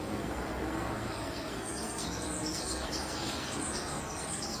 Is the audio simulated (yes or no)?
yes